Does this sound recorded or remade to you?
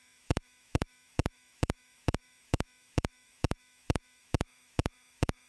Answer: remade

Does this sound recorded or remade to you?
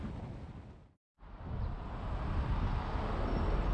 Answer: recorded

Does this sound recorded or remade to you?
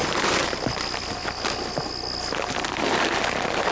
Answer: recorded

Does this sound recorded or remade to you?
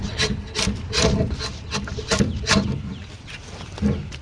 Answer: recorded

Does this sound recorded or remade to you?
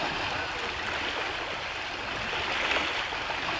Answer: recorded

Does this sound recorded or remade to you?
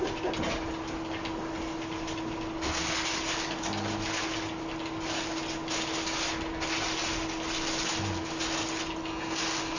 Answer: recorded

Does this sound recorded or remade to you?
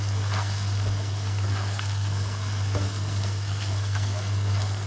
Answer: remade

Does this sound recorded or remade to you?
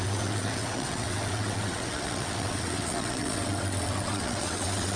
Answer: remade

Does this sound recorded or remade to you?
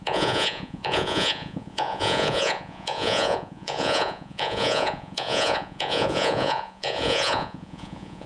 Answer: remade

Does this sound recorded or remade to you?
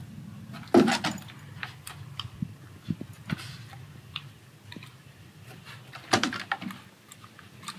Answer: recorded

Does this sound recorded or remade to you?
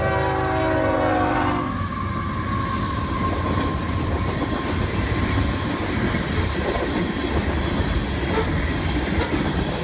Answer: recorded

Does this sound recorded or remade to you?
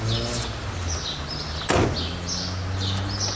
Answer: recorded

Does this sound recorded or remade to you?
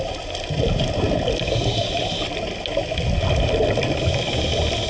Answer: recorded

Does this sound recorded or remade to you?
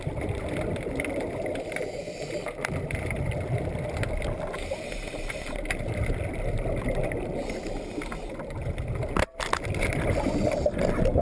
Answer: recorded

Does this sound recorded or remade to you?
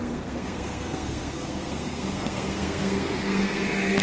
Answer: remade